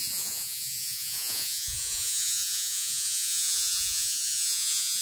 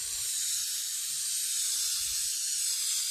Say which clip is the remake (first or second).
first